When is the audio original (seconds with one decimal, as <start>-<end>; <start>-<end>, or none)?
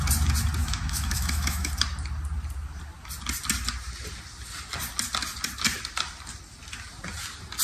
0.0-0.6; 1.7-7.6